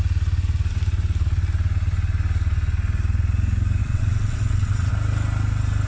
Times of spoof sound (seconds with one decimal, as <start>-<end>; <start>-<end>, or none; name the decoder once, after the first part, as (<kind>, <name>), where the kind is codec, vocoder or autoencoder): 3.8-4.9 (vocoder, WaveNeXt)